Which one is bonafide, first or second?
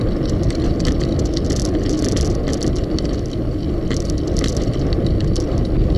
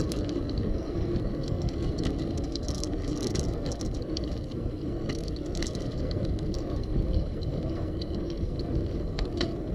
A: first